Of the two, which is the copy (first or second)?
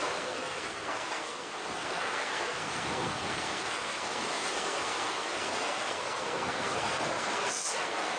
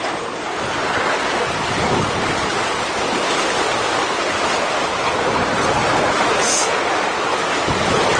first